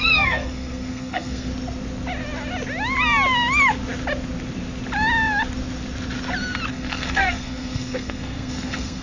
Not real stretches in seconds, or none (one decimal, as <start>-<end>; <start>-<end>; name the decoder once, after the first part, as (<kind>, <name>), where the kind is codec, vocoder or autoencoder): 0.0-1.5 (codec, SNAC); 6.7-9.0